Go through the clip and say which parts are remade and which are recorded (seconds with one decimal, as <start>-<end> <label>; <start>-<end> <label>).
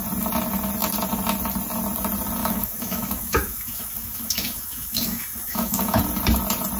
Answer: 0.0-2.4 recorded; 2.4-6.0 remade; 6.0-6.8 recorded